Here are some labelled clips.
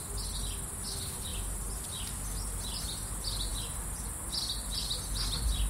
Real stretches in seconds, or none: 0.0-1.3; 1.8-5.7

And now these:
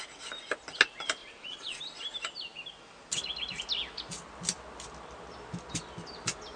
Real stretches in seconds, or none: 0.0-1.2; 1.8-6.6

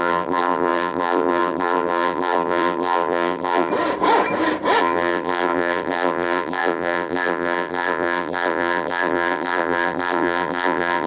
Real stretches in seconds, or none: 3.7-4.8